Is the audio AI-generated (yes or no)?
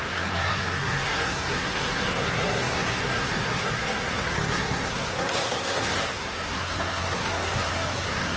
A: yes